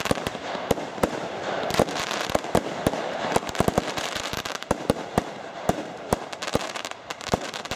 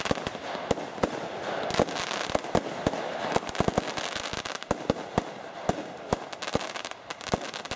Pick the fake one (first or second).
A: first